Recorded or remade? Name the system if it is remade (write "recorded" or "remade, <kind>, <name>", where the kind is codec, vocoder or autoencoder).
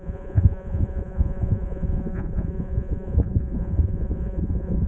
remade, vocoder, Vocos